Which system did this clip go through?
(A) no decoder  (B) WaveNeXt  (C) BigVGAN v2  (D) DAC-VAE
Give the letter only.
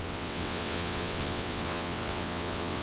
B